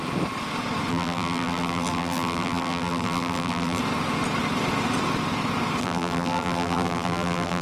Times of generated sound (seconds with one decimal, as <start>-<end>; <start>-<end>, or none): 0.9-3.8; 5.8-7.6